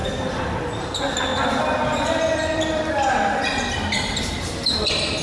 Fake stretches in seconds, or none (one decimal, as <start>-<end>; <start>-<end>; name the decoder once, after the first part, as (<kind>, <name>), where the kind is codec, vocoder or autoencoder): none